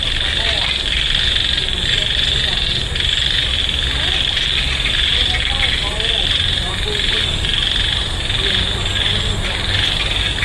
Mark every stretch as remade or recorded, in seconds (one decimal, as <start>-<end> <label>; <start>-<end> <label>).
0.0-10.4 recorded